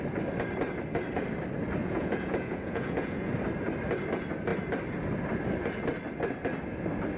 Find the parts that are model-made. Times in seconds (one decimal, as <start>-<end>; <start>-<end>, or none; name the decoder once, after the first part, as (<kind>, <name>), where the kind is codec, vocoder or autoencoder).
1.8-3.3 (vocoder, Vocos)